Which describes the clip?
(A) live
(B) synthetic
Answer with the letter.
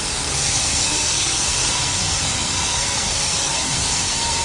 B